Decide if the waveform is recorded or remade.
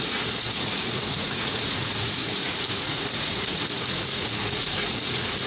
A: remade